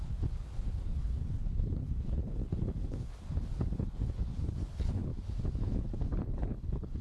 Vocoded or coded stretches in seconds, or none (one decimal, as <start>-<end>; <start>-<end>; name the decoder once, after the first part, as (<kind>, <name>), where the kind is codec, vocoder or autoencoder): 0.0-5.1 (codec, HILCodec); 5.6-7.0